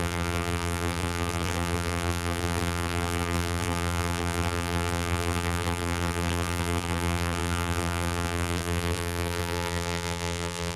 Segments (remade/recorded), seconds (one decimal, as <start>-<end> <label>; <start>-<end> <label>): 0.0-10.8 remade